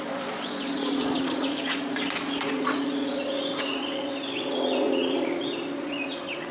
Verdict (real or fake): fake